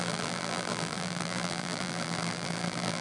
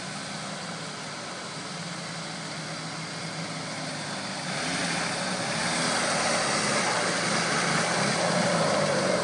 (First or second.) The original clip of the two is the second